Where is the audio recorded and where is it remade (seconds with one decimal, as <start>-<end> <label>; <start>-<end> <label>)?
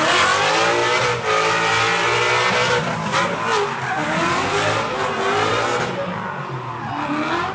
0.0-7.5 recorded